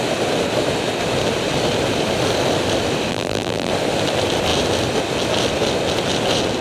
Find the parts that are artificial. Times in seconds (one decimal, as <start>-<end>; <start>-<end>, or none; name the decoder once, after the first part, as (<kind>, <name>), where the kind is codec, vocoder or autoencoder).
3.1-3.7 (vocoder, BigVGAN v2)